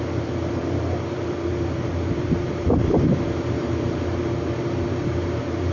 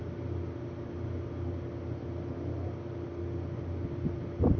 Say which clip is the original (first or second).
second